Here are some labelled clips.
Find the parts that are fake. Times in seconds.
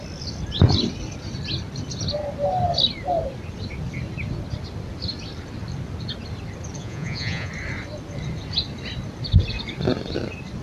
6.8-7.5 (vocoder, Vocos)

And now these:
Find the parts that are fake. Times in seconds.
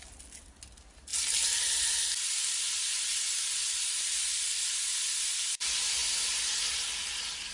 none